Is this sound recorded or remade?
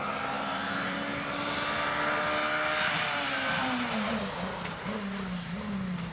recorded